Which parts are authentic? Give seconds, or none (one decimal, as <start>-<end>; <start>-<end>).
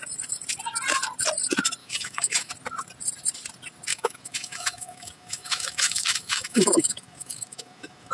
0.0-1.8; 2.5-3.9